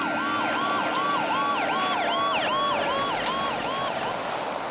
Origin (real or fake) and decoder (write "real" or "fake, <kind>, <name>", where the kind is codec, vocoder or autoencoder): real